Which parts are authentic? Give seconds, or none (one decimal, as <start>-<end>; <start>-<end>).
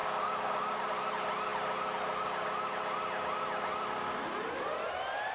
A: 0.0-5.3